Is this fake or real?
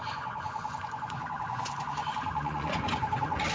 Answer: fake